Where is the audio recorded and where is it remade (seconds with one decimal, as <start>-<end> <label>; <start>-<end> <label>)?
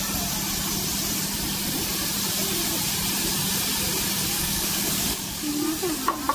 0.0-4.3 recorded; 4.3-5.5 remade; 5.5-6.3 recorded